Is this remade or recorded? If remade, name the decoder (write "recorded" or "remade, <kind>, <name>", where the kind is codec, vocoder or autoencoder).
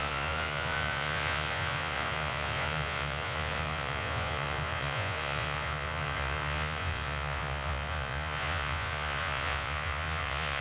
remade, vocoder, Vocos